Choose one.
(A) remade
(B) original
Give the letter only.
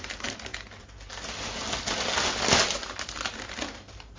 B